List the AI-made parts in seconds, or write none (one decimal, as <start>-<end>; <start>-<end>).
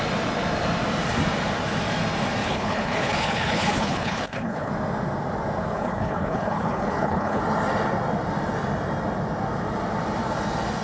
2.4-4.7; 5.7-7.4